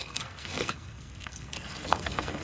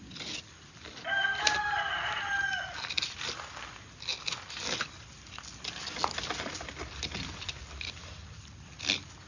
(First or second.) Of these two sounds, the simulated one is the first